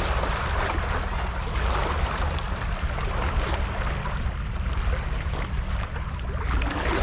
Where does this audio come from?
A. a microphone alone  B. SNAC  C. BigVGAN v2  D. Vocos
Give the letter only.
A